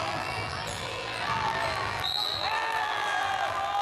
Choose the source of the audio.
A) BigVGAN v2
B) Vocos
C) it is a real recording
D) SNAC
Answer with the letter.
A